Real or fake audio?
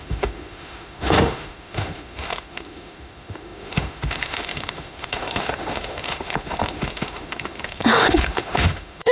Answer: fake